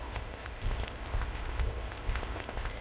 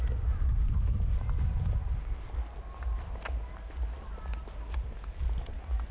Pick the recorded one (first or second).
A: second